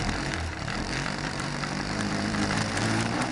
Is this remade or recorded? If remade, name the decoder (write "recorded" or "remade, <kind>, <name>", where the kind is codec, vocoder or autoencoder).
remade, vocoder, BigVGAN v2